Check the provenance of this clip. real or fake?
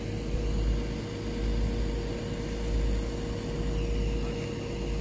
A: real